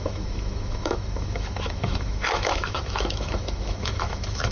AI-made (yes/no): yes